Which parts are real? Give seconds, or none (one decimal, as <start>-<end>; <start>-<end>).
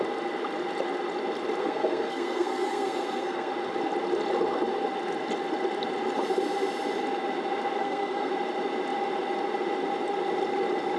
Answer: 0.0-1.6; 3.5-7.8; 8.3-11.0